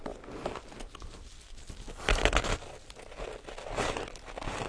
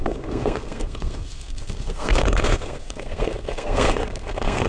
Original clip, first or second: first